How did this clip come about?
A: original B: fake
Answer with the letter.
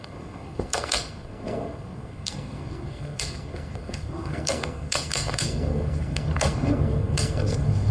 B